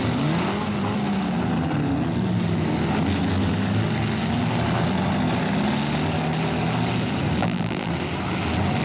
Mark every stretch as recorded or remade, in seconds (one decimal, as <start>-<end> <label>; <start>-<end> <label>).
0.0-7.4 recorded; 7.4-7.9 remade; 7.9-8.8 recorded